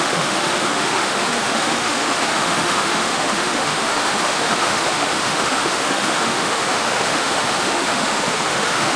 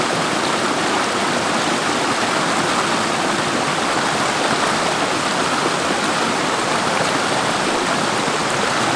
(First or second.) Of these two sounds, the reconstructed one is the first